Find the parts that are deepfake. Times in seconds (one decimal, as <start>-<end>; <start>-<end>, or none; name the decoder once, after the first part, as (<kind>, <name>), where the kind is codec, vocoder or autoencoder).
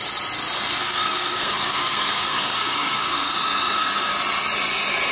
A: 0.8-3.9 (codec, SNAC)